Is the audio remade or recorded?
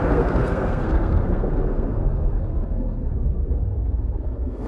remade